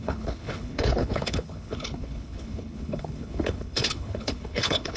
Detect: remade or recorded remade